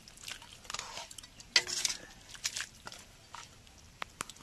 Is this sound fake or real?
real